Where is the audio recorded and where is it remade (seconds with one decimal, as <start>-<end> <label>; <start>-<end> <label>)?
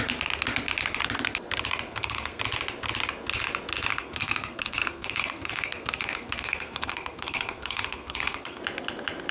0.0-1.9 recorded; 1.9-2.4 remade; 2.4-3.9 recorded; 3.9-8.6 remade; 8.6-9.3 recorded